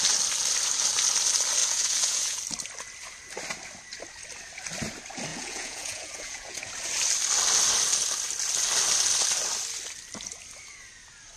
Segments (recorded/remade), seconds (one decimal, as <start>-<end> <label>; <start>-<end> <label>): 0.0-1.6 recorded; 1.6-2.4 remade; 2.4-5.3 recorded; 5.3-6.7 remade; 6.7-11.4 recorded